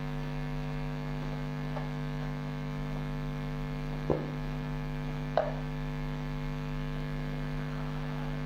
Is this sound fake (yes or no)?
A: yes